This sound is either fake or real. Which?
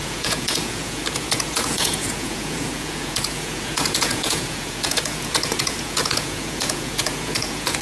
fake